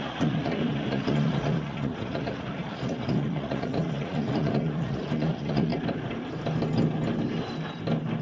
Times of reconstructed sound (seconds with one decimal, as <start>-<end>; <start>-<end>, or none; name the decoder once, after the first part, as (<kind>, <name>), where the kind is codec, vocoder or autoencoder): 0.0-5.7 (vocoder, Vocos)